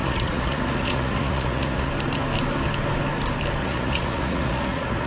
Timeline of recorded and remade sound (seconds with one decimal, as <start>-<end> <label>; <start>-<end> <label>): 0.0-1.9 remade; 1.9-3.6 recorded; 3.6-5.1 remade